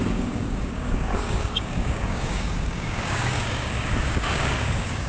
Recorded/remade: remade